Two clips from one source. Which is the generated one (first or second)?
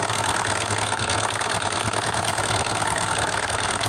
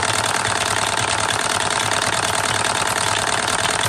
first